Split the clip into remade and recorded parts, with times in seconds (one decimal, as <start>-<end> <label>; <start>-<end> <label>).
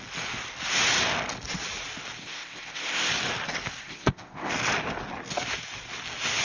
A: 0.0-2.2 recorded; 2.2-3.1 remade; 3.1-3.8 recorded; 3.8-4.5 remade; 4.5-6.4 recorded